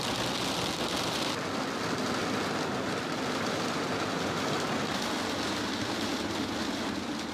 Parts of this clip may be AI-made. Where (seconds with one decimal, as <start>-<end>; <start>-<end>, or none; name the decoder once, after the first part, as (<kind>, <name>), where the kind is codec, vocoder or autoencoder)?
none